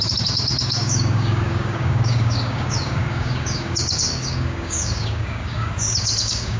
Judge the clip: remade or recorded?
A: remade